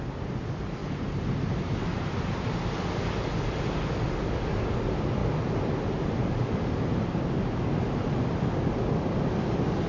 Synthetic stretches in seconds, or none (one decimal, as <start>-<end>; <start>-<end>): none